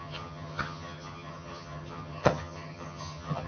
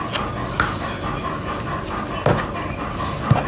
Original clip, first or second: second